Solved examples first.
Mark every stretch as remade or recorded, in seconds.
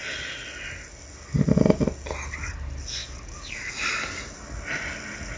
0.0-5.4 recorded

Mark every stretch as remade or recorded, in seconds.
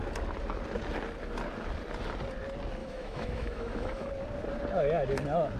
0.0-2.8 recorded; 2.8-4.1 remade; 4.1-5.6 recorded